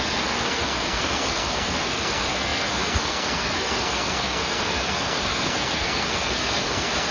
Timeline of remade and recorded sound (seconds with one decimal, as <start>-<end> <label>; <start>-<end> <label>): 0.0-7.1 remade